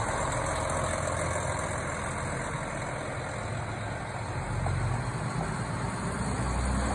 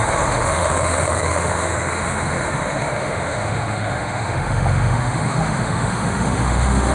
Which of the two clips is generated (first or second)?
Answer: second